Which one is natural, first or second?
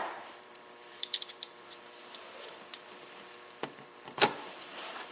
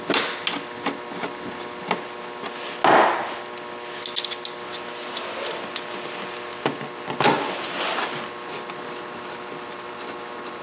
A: second